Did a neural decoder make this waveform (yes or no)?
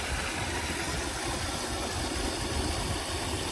no